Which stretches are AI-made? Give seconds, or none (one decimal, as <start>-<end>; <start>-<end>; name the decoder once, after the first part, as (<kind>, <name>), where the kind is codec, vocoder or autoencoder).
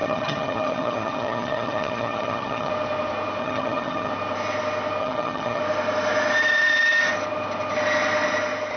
0.0-2.7 (vocoder, HiFi-GAN); 3.4-4.1; 5.0-5.6